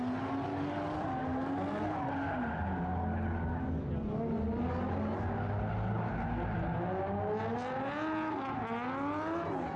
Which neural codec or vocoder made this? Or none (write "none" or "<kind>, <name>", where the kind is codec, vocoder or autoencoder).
none